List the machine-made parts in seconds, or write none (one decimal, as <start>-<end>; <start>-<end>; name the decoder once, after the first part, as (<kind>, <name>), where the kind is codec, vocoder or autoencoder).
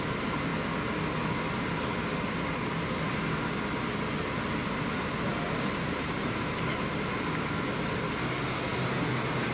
5.3-6.9 (vocoder, BigVGAN v2); 8.7-9.5